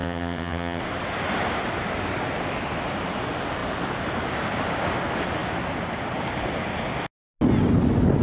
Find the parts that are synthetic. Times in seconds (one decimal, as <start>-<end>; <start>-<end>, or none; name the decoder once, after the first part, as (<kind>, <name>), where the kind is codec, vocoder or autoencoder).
0.0-0.8 (vocoder, HiFi-GAN)